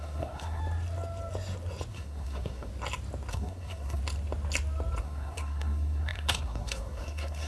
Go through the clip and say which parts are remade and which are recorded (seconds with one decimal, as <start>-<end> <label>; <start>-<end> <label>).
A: 0.0-0.6 remade; 0.6-1.9 recorded; 1.9-2.7 remade; 2.7-3.3 recorded; 3.3-4.0 remade; 4.0-5.0 recorded; 5.0-7.5 remade